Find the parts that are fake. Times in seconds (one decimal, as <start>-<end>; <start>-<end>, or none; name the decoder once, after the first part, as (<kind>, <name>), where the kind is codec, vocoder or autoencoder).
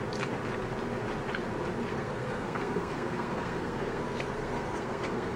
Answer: 1.9-5.4 (codec, SNAC)